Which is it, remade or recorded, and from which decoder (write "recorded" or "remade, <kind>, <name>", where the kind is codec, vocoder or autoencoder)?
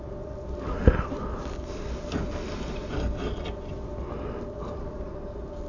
recorded